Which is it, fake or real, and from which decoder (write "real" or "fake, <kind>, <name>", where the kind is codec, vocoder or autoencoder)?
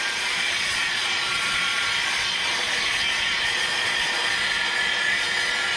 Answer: fake, vocoder, Vocos